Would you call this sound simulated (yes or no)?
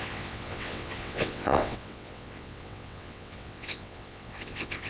yes